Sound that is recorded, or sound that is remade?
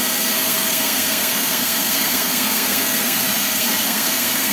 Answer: remade